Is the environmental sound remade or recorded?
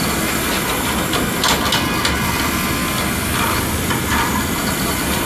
recorded